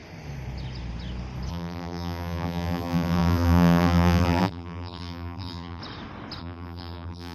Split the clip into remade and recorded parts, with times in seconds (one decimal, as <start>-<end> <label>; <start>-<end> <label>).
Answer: 0.0-1.5 recorded; 1.5-5.8 remade; 5.8-6.4 recorded; 6.4-7.3 remade